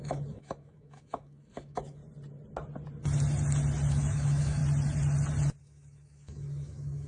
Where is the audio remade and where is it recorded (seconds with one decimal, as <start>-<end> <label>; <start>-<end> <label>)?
0.0-2.0 remade; 2.0-3.9 recorded; 3.9-4.6 remade; 4.6-5.6 recorded; 5.6-7.1 remade